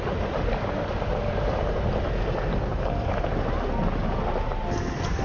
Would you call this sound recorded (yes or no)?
yes